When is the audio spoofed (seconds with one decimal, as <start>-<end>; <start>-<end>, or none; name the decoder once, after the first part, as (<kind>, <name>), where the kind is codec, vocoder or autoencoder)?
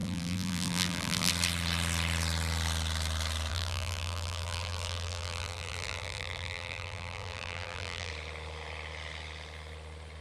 0.0-1.3 (vocoder, BigVGAN v2); 3.5-8.1